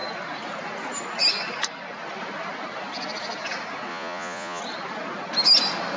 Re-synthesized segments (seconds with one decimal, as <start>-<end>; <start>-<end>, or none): 3.9-4.6